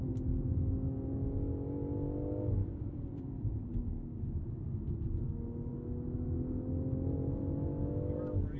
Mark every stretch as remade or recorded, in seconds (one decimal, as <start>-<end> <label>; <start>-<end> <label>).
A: 0.0-2.6 recorded; 2.6-3.7 remade; 3.7-8.6 recorded